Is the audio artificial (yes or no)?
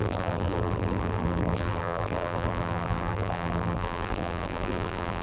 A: yes